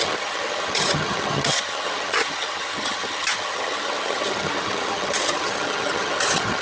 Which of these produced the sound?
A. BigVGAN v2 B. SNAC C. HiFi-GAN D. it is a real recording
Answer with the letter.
C